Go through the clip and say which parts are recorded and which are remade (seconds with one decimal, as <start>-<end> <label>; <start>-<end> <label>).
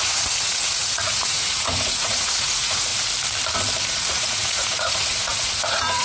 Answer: 0.0-2.9 remade; 2.9-3.9 recorded; 3.9-6.0 remade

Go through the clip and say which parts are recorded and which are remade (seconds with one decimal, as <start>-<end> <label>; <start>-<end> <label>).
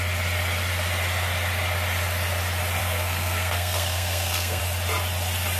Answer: 0.0-2.8 recorded; 2.8-4.6 remade; 4.6-5.6 recorded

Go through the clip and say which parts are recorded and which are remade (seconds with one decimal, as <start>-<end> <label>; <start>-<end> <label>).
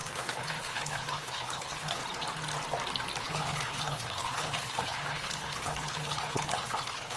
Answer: 0.0-2.0 remade; 2.0-3.2 recorded; 3.2-7.2 remade